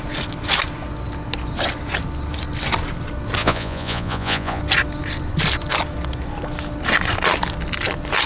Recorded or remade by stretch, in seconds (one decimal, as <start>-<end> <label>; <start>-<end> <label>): 0.0-3.4 recorded; 3.4-4.6 remade; 4.6-8.3 recorded